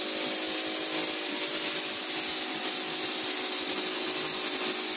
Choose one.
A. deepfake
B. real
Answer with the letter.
B